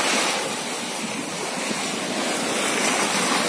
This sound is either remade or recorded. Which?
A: recorded